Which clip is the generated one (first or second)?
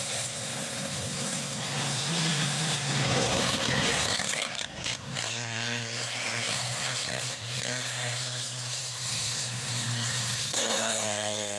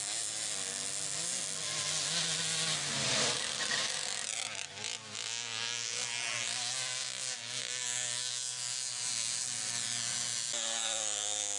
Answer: first